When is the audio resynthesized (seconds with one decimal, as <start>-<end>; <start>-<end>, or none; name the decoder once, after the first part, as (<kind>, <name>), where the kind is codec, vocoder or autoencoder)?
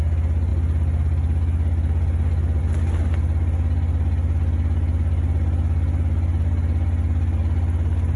none